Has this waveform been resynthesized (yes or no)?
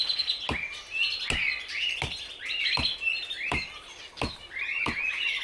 no